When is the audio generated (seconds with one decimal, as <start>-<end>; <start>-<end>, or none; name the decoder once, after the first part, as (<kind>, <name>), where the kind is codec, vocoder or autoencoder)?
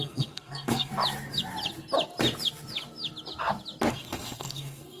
0.0-0.9 (codec, SNAC); 3.9-5.0